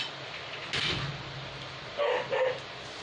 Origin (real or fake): real